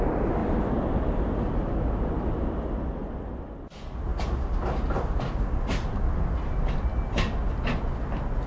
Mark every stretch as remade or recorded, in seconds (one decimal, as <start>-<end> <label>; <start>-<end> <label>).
0.0-8.5 recorded